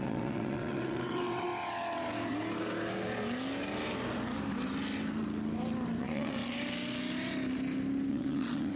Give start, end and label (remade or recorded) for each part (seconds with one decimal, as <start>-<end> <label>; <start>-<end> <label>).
0.0-1.5 remade; 1.5-6.0 recorded; 6.0-6.4 remade; 6.4-8.1 recorded; 8.1-8.8 remade